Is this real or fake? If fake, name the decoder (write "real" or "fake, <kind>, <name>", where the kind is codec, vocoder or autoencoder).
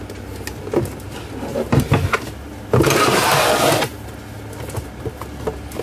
real